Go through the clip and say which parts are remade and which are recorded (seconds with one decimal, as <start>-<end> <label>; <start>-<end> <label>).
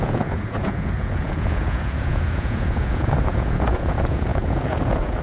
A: 0.0-5.2 remade